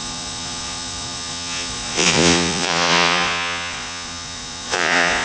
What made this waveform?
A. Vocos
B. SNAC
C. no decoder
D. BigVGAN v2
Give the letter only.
A